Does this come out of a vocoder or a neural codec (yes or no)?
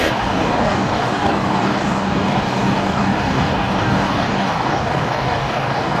yes